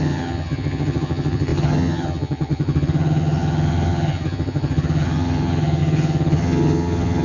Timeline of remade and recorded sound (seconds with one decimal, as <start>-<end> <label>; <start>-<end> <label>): 0.0-7.2 remade